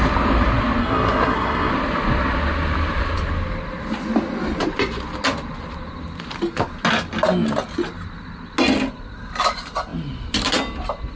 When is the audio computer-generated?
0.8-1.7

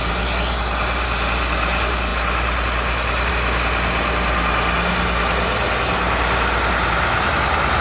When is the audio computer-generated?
none

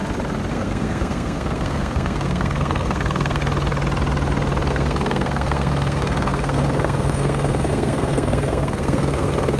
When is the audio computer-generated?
0.5-3.4; 4.7-9.6

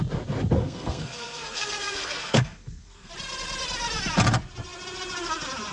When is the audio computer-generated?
0.6-3.1

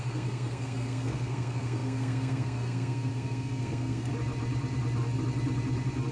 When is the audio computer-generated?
0.0-4.1

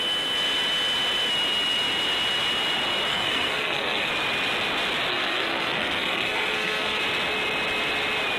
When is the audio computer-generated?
3.1-4.1; 5.1-7.0

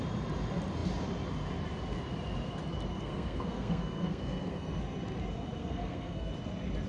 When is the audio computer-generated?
2.9-4.8; 5.6-6.3